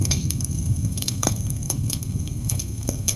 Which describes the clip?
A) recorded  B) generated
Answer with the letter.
B